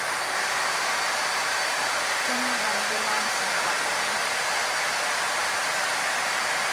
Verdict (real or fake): fake